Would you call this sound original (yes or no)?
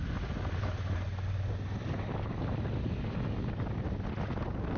yes